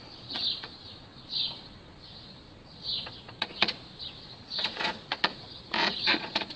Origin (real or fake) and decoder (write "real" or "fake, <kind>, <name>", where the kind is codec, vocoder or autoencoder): fake, vocoder, Vocos